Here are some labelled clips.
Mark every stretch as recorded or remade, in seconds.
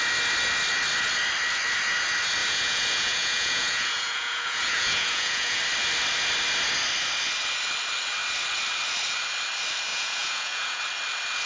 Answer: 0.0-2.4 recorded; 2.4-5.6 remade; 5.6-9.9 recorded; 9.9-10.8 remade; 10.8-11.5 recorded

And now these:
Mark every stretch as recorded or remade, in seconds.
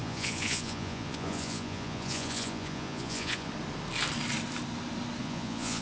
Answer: 0.0-3.5 remade; 3.5-5.2 recorded; 5.2-5.8 remade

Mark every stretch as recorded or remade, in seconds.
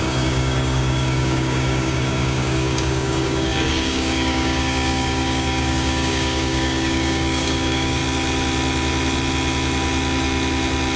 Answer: 0.0-8.0 remade; 8.0-11.0 recorded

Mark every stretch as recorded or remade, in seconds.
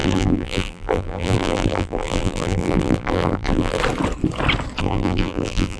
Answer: 0.0-3.8 remade; 3.8-4.8 recorded; 4.8-5.8 remade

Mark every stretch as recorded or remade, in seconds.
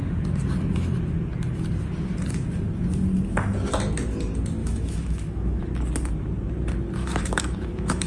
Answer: 0.0-4.6 recorded; 4.6-5.6 remade; 5.6-7.0 recorded; 7.0-8.1 remade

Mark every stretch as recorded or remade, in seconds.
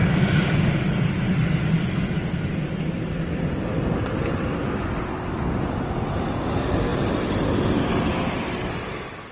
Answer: 0.0-9.3 recorded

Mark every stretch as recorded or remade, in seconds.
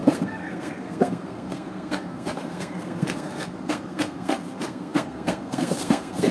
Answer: 0.0-6.3 remade